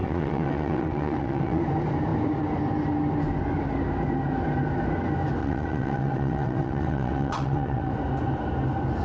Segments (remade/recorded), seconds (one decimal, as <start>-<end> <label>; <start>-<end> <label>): 0.0-1.6 remade; 1.6-5.4 recorded; 5.4-7.9 remade; 7.9-9.0 recorded